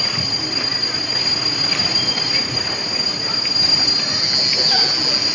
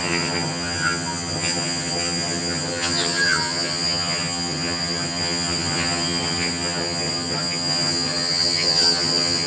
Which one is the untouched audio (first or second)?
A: first